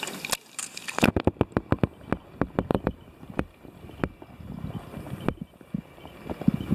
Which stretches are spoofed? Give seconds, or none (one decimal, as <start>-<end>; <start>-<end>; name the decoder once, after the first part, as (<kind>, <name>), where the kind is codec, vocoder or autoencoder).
2.7-4.0 (vocoder, BigVGAN v2)